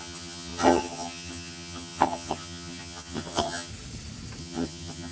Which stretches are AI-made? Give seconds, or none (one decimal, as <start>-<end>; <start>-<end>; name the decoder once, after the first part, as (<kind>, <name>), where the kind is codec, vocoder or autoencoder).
0.0-3.7 (vocoder, HiFi-GAN); 4.4-5.1

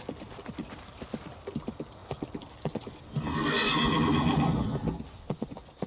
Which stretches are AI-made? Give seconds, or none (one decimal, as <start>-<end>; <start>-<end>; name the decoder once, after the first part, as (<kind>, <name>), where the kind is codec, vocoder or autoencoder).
none